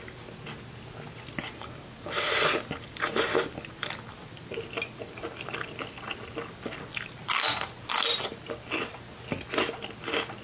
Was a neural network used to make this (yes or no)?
no